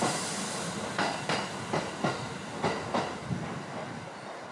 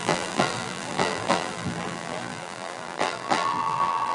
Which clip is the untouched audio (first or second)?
first